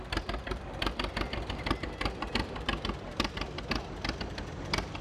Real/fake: fake